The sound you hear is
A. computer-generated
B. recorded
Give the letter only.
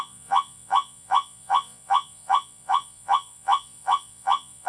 A